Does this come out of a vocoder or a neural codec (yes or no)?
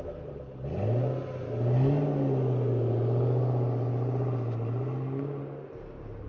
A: no